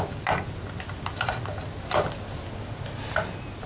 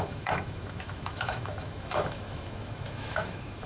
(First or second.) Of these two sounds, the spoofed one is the second